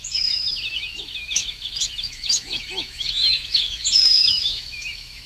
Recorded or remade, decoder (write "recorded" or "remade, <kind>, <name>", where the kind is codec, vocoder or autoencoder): remade, autoencoder, DAC-VAE